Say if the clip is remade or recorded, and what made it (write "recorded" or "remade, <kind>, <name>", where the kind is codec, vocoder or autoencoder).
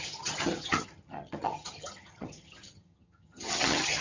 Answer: remade, vocoder, HiFi-GAN